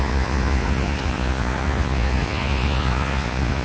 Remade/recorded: remade